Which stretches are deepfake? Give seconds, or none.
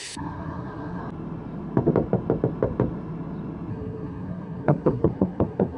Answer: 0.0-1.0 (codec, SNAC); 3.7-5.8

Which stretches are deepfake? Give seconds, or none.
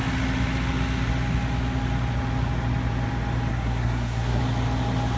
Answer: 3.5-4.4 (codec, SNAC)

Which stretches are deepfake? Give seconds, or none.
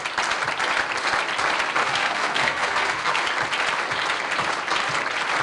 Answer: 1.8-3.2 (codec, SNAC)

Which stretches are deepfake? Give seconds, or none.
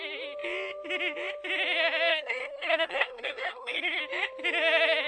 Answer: 2.1-4.0 (codec, SNAC)